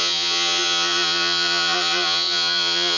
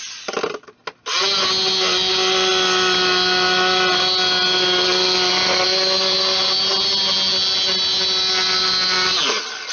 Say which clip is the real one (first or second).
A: second